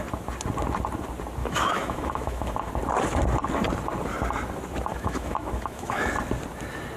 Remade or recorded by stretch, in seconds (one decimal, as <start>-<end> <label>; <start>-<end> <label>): 0.0-1.4 recorded; 1.4-2.7 remade; 2.7-4.9 recorded; 4.9-6.1 remade; 6.1-7.0 recorded